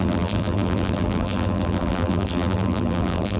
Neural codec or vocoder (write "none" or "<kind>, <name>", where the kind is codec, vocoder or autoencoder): vocoder, BigVGAN v2